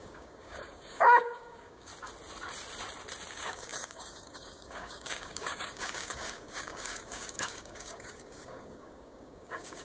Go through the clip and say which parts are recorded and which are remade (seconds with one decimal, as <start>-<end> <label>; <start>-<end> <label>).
0.0-1.9 remade; 1.9-3.3 recorded; 3.3-9.8 remade

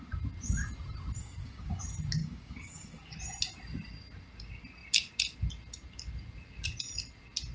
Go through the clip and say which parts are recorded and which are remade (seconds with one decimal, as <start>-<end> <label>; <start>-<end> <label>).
0.0-1.2 recorded; 1.2-1.8 remade; 1.8-2.2 recorded; 2.2-3.2 remade; 3.2-7.5 recorded

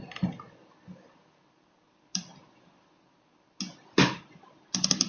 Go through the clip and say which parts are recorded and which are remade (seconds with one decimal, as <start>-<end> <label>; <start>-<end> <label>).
0.0-5.1 recorded

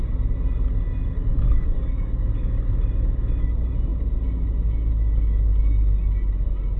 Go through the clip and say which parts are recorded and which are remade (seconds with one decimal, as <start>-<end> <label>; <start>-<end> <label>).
0.0-1.3 recorded; 1.3-2.5 remade; 2.5-6.8 recorded

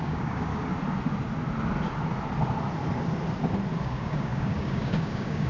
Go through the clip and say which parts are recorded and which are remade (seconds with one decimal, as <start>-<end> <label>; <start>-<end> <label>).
0.0-0.5 remade; 0.5-3.8 recorded; 3.8-5.5 remade